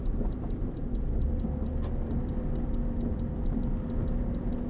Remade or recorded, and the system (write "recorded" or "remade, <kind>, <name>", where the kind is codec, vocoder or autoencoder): recorded